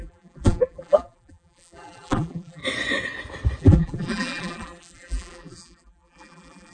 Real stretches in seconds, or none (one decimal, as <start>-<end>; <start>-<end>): 2.6-3.6